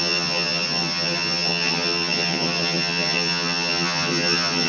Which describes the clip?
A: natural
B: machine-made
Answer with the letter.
B